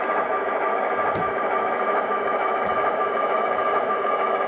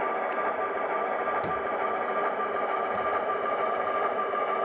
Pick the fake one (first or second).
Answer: first